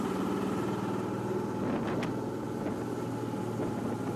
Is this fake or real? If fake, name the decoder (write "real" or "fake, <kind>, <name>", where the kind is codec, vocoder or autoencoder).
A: real